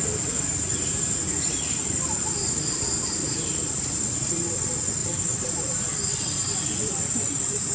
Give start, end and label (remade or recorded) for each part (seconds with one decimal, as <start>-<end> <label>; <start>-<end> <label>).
0.0-7.7 remade